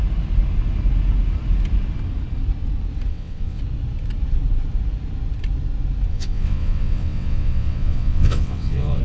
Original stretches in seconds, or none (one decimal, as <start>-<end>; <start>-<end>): 0.0-3.1; 3.6-6.1